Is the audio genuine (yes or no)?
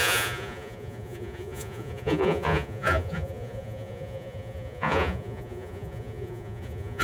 no